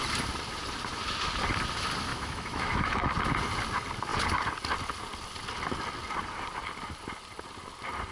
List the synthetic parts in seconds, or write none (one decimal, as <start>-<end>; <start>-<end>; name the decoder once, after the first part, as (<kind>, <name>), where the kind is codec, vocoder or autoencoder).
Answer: 2.1-3.1 (autoencoder, DAC-VAE)